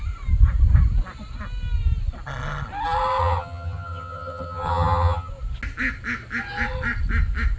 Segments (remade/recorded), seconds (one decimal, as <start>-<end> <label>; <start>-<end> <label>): 0.0-3.2 recorded; 3.2-5.3 remade; 5.3-7.6 recorded

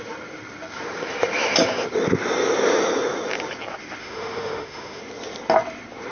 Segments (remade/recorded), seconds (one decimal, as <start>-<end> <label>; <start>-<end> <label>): 0.0-4.0 recorded; 4.0-5.0 remade; 5.0-6.1 recorded

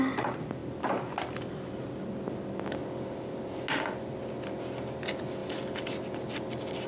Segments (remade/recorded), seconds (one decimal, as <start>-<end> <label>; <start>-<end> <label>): 0.0-6.9 recorded

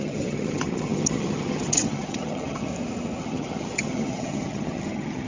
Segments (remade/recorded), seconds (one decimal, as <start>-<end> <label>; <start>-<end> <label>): 0.0-2.7 remade; 2.7-3.2 recorded; 3.2-5.3 remade

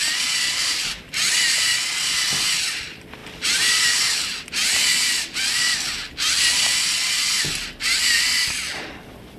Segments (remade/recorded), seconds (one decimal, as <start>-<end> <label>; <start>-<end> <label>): 0.0-9.4 recorded